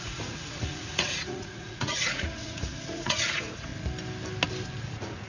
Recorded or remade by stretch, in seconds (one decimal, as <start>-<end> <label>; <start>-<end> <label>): 0.0-3.7 remade; 3.7-4.8 recorded; 4.8-5.3 remade